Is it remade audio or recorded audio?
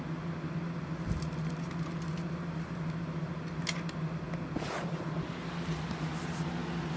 recorded